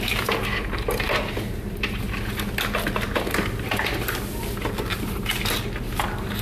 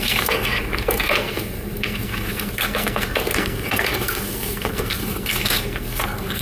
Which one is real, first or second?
first